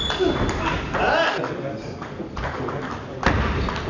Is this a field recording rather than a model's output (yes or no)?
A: yes